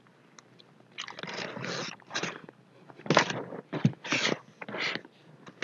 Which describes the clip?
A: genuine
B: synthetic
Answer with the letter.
A